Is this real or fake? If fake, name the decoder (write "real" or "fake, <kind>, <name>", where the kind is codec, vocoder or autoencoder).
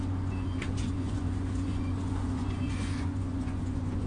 fake, vocoder, Vocos